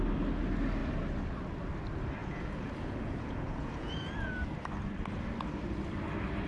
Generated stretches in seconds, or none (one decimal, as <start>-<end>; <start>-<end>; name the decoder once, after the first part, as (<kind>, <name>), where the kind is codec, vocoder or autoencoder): 2.2-4.3 (vocoder, Vocos)